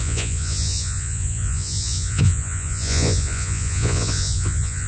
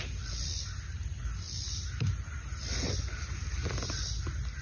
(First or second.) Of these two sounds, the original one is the second